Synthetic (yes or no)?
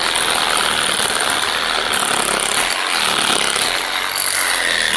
no